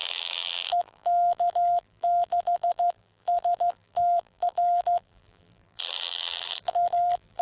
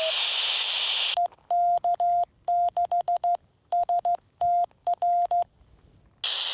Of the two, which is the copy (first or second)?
first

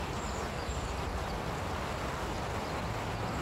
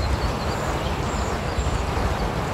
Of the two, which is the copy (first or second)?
second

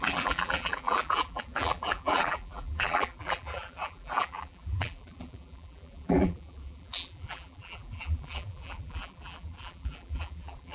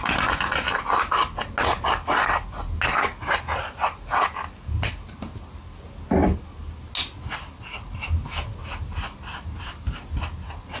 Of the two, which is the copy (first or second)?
first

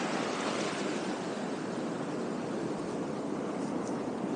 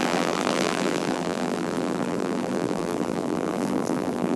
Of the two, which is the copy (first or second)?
second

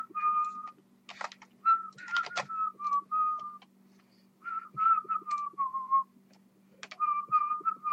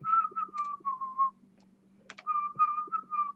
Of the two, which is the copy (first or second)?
second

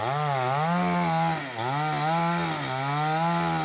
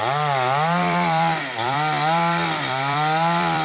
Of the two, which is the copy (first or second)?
second